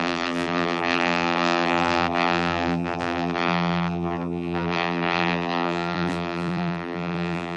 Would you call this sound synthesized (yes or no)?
yes